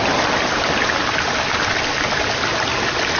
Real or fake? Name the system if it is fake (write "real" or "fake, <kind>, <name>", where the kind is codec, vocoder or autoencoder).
real